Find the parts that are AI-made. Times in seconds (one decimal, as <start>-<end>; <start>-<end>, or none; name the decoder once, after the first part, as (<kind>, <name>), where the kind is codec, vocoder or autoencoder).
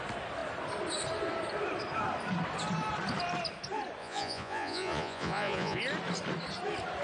4.0-5.8 (vocoder, Vocos)